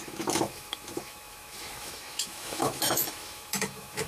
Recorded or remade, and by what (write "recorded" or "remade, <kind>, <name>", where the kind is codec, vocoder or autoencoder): remade, autoencoder, DAC-VAE